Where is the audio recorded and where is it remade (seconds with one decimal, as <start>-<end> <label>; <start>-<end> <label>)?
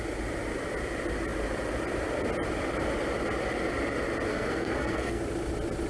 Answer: 0.0-4.3 recorded; 4.3-5.2 remade; 5.2-5.9 recorded